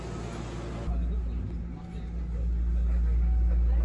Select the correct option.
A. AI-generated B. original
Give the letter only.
B